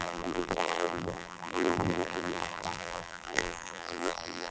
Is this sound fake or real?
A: fake